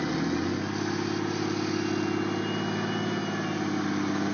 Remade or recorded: recorded